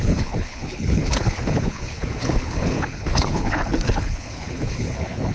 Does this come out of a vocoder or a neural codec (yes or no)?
yes